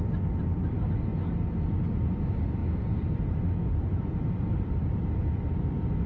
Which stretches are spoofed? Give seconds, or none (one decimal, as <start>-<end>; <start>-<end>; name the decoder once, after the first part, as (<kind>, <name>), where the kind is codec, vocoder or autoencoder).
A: 0.0-1.1 (vocoder, BigVGAN v2); 1.9-6.1